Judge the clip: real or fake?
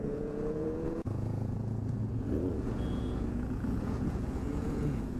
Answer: fake